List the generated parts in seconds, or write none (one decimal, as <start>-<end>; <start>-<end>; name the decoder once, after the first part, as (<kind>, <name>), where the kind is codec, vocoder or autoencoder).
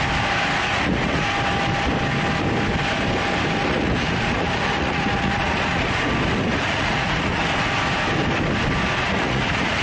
0.6-1.3 (vocoder, Vocos); 3.6-6.0; 6.5-7.4; 9.0-9.8